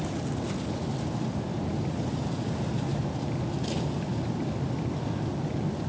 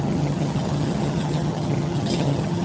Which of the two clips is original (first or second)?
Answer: first